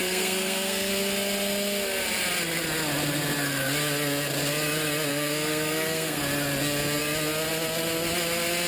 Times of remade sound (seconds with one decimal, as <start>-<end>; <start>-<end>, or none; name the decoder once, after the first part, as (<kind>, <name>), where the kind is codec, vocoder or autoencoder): 0.0-0.9 (codec, SNAC); 5.1-6.2